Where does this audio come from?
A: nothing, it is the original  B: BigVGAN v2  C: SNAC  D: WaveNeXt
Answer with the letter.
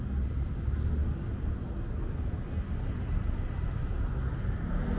A